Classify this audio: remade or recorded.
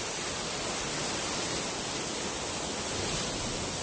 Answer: recorded